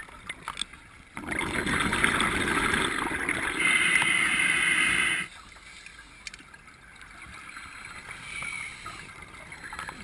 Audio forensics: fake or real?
real